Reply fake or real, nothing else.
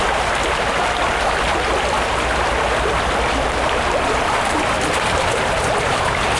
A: real